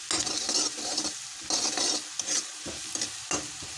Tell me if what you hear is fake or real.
real